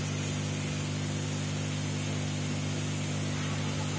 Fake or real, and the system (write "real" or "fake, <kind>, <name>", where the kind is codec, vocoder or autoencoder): real